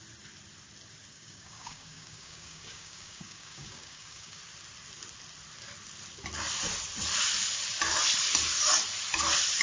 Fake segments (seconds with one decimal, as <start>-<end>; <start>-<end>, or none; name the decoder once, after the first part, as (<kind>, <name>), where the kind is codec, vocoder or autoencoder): 1.1-4.4 (codec, DAC)